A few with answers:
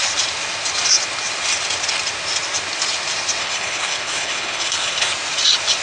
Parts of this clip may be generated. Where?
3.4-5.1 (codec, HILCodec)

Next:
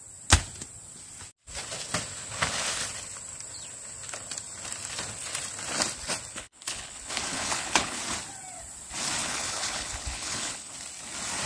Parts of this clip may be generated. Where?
6.3-8.0 (codec, HILCodec); 9.2-10.7

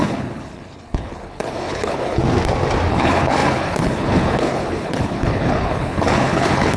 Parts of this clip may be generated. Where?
0.0-2.2 (codec, HILCodec); 2.9-6.8

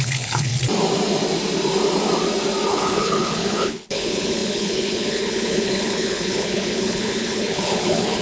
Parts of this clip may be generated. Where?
0.0-0.5 (codec, HILCodec); 2.7-8.2

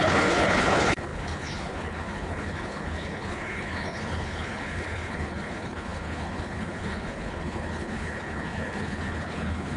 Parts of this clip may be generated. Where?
0.0-9.8 (codec, HILCodec)

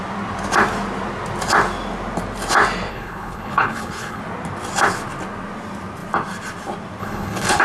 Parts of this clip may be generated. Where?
2.9-4.2 (codec, HILCodec); 7.0-7.6

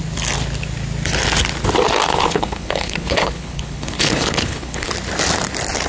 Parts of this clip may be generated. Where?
2.1-4.9 (codec, HILCodec)

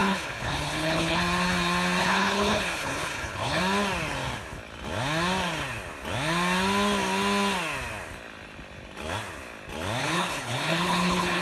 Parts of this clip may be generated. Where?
0.0-1.2 (codec, HILCodec); 2.0-3.6; 10.0-11.4